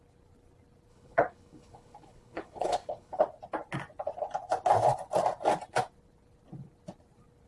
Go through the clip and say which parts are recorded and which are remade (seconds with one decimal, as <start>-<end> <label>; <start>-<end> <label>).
0.0-0.9 recorded; 0.9-3.2 remade; 3.2-7.5 recorded